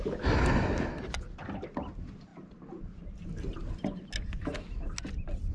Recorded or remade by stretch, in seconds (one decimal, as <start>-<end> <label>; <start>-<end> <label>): 0.0-5.5 recorded